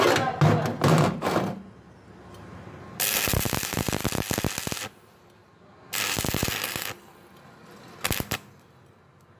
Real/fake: real